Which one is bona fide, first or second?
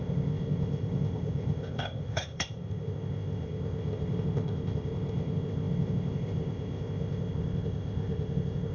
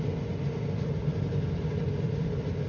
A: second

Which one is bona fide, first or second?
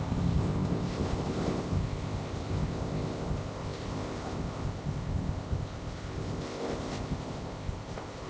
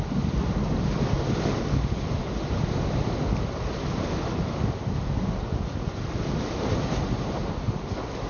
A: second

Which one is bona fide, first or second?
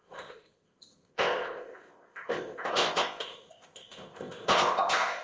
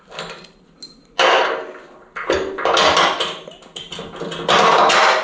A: second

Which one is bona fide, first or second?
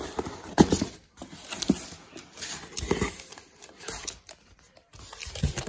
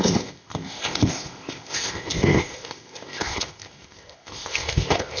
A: first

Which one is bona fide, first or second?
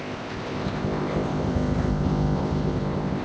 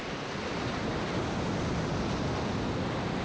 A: second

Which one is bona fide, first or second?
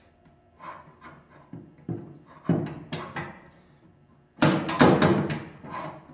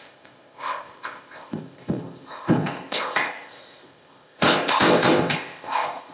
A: first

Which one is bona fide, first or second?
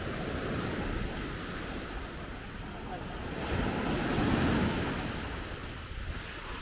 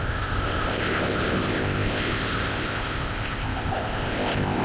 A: first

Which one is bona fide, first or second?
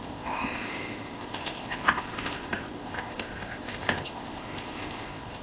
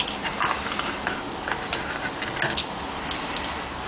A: second